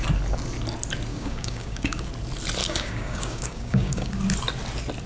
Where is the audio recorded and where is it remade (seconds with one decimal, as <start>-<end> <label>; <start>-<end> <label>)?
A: 0.0-1.1 recorded; 1.1-2.1 remade; 2.1-2.6 recorded; 2.6-4.1 remade; 4.1-5.1 recorded